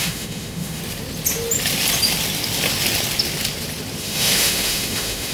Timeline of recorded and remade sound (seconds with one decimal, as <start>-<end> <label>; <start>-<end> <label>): 0.0-0.8 remade; 0.8-4.0 recorded; 4.0-5.3 remade